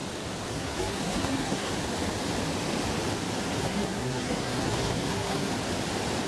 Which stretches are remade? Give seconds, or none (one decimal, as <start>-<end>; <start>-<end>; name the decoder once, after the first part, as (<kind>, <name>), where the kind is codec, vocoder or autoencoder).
0.5-1.7 (codec, SNAC); 3.6-5.5